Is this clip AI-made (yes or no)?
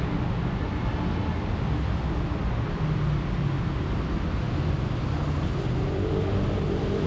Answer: no